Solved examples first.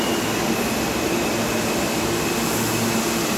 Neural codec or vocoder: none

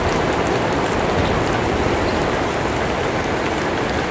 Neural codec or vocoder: none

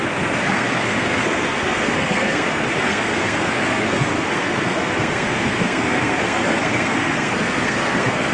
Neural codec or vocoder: codec, SNAC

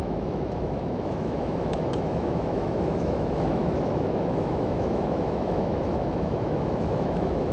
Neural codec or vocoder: autoencoder, DAC-VAE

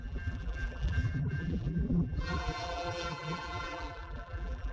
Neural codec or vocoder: vocoder, BigVGAN v2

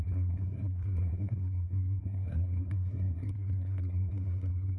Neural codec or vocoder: codec, SNAC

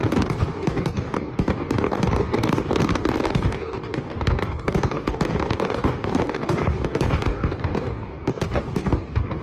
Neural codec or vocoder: codec, DAC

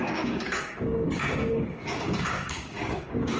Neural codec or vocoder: codec, DAC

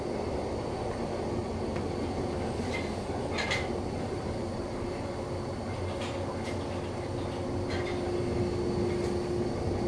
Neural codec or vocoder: none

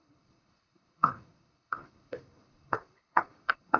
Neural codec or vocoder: codec, HILCodec